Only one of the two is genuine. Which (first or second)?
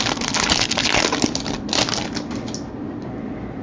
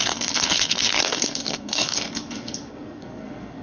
first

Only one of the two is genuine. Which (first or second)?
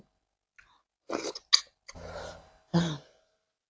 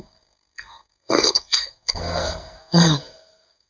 first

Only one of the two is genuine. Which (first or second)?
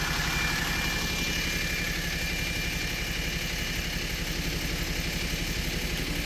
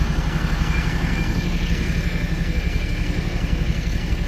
first